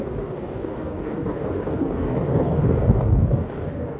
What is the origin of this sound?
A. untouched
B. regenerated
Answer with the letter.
B